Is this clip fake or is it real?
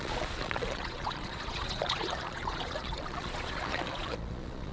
fake